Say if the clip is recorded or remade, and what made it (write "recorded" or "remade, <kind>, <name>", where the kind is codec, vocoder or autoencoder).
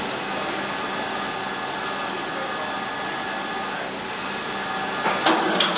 recorded